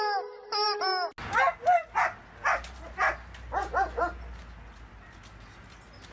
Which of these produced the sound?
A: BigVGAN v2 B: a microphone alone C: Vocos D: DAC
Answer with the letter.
B